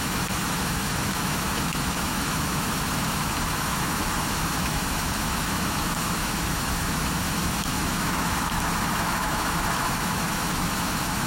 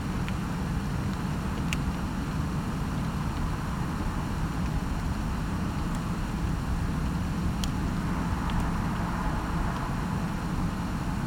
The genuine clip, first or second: second